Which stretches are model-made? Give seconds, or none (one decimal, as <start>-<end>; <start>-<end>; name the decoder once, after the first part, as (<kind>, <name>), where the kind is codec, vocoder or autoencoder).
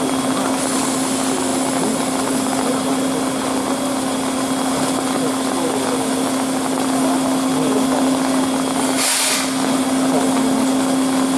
none